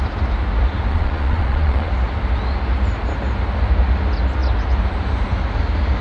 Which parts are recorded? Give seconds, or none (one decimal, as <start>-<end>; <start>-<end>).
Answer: 0.0-0.9; 1.9-6.0

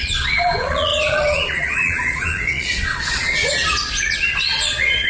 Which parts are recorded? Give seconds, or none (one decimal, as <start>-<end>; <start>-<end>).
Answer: none

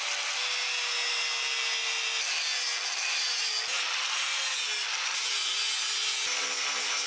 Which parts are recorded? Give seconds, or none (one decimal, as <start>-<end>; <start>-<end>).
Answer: 0.0-7.1

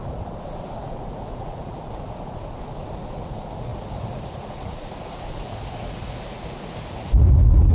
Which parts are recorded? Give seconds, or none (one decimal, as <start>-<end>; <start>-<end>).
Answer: none

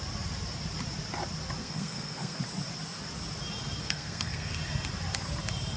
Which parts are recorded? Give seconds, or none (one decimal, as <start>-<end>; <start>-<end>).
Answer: 0.0-1.6; 2.4-3.8; 4.6-5.8

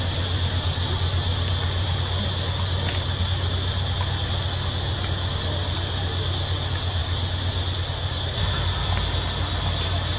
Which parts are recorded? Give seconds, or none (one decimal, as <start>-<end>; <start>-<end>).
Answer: 0.0-10.2

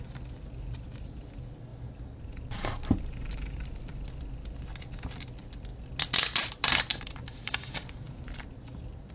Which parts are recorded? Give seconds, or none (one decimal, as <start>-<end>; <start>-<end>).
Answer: 0.0-1.7; 3.6-6.9; 8.5-9.1